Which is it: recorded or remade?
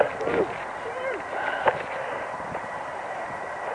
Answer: recorded